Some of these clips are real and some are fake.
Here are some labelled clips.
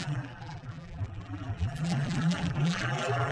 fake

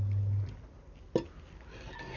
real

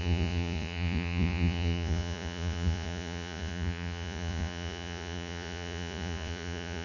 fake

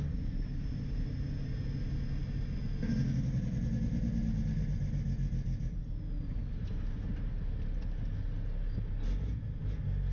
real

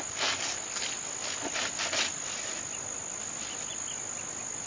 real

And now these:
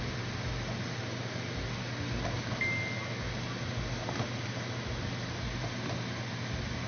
real